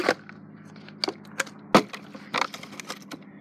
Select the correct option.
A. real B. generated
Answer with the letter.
A